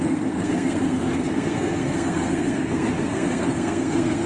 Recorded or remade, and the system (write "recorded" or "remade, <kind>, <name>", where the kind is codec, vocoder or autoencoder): remade, codec, SNAC